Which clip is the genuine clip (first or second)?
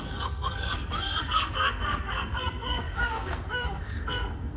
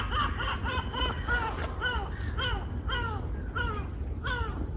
second